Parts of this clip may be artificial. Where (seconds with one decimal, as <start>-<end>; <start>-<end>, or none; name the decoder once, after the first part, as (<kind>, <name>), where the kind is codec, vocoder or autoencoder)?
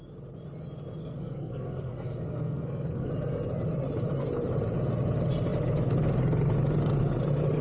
1.0-3.1 (codec, SNAC)